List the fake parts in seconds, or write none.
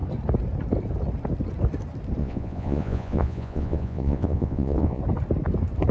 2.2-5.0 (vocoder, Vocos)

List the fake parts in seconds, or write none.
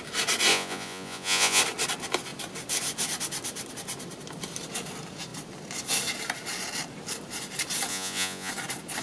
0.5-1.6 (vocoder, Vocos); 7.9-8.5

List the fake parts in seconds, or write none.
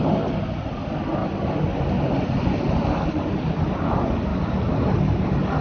none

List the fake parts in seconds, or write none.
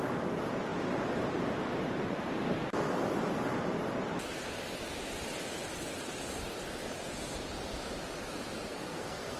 8.7-9.4 (codec, SNAC)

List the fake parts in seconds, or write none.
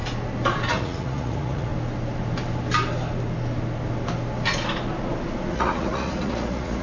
0.7-1.7 (vocoder, Vocos); 5.5-6.8